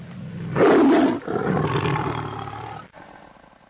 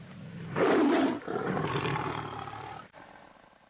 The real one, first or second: first